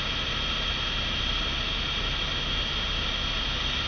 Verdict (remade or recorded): recorded